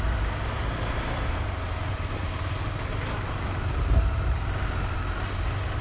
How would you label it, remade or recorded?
recorded